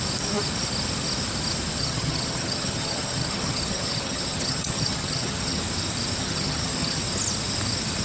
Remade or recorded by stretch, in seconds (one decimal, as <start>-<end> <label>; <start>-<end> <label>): 0.0-1.8 recorded; 1.8-5.6 remade; 5.6-6.2 recorded; 6.2-7.0 remade; 7.0-8.0 recorded